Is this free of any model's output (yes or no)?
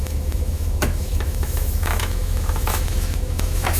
no